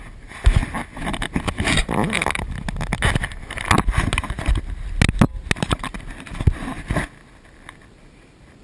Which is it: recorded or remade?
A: recorded